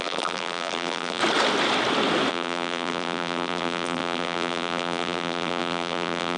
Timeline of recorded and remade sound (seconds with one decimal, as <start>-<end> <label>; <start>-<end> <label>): 0.0-1.2 remade; 1.2-2.3 recorded; 2.3-6.4 remade